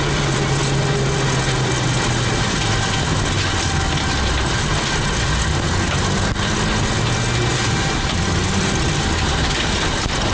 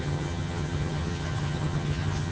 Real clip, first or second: first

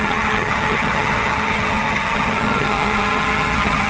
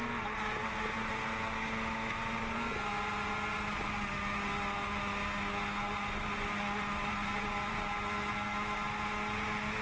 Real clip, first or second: second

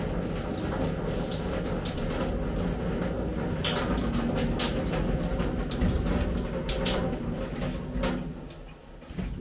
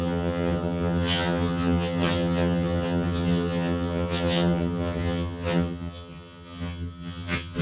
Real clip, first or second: first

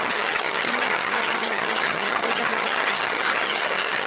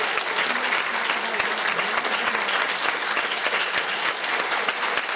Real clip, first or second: second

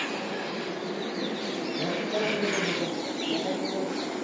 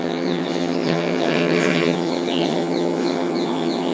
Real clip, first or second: first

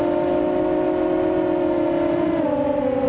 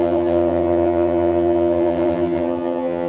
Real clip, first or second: first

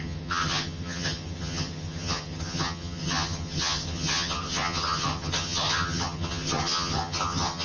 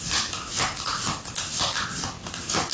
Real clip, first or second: second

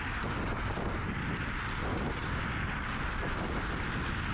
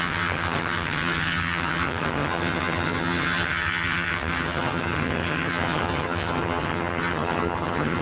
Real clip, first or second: first